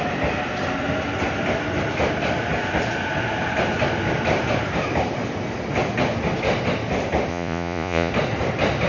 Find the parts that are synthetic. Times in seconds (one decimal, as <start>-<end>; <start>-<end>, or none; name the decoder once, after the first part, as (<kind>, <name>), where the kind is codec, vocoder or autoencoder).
7.3-8.1 (vocoder, Vocos)